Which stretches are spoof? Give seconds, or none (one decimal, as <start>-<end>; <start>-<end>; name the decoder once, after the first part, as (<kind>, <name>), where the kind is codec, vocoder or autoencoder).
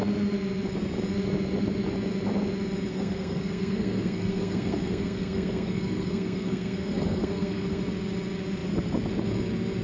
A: 2.9-7.8 (codec, SNAC)